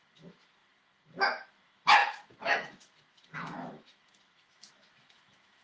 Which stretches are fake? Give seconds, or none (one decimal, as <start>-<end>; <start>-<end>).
0.0-5.6